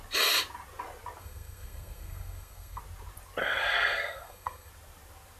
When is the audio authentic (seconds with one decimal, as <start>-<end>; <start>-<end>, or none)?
0.0-1.2; 2.8-3.4; 4.7-5.4